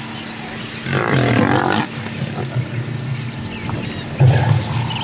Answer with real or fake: real